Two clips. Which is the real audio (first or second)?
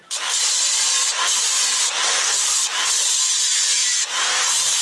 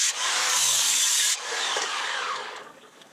first